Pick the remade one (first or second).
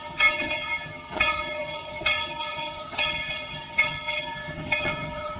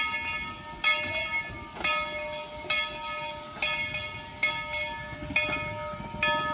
first